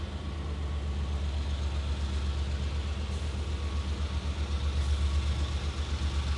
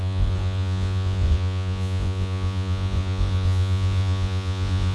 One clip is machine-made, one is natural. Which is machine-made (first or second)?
second